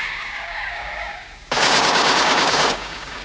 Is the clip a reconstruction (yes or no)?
yes